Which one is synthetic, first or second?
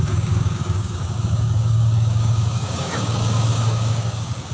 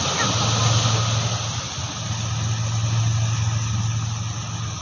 first